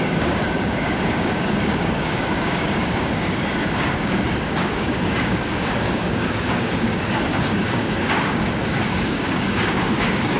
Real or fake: fake